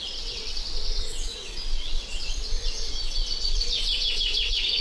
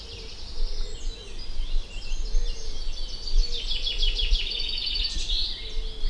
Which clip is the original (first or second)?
second